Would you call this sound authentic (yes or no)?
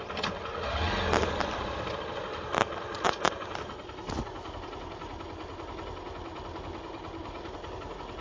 yes